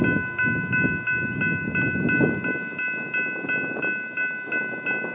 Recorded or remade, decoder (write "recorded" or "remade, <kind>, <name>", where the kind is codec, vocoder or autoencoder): recorded